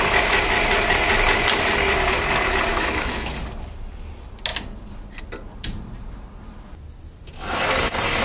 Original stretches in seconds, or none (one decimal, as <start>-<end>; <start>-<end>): 0.0-2.7; 3.3-8.2